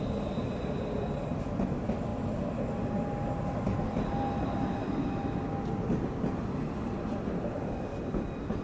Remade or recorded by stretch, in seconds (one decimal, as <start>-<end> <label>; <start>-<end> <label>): 0.0-8.6 recorded